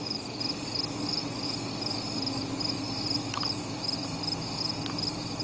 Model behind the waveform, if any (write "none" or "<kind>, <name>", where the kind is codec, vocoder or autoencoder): none